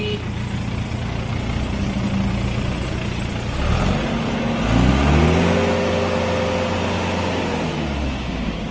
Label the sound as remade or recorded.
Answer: recorded